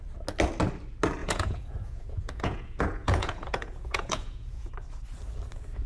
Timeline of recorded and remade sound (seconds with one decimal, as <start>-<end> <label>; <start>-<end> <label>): 0.0-1.2 recorded; 1.2-4.7 remade; 4.7-5.9 recorded